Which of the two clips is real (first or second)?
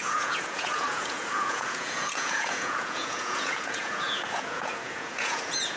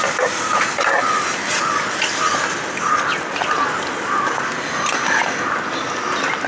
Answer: second